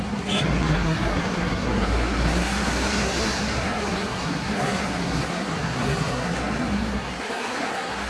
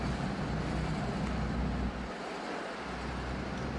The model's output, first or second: first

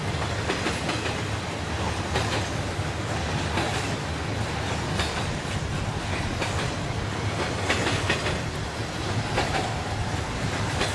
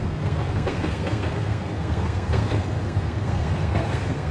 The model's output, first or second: second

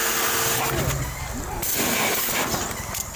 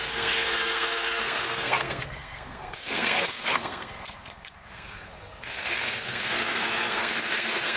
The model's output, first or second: second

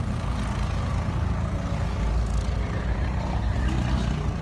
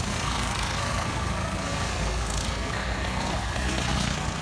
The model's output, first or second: second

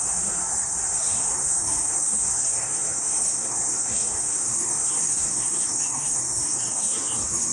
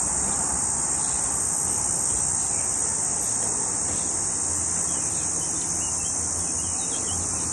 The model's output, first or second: first